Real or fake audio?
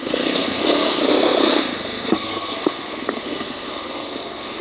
fake